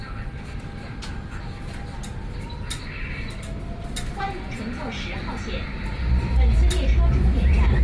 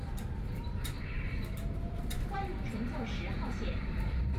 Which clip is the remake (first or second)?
second